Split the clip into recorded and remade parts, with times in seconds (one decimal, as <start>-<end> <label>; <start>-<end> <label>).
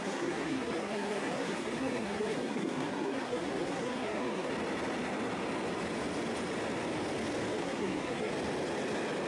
0.0-4.5 remade; 4.5-7.6 recorded; 7.6-8.3 remade; 8.3-9.3 recorded